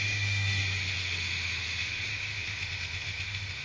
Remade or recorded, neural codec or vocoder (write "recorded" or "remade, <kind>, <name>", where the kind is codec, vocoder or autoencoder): remade, autoencoder, DAC-VAE